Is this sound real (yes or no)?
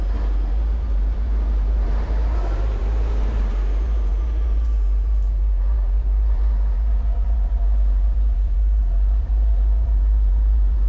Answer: no